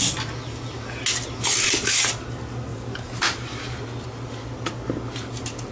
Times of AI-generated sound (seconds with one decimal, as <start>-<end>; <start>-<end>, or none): 2.7-3.8